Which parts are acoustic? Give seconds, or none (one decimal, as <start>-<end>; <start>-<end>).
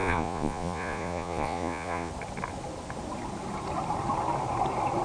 2.1-5.0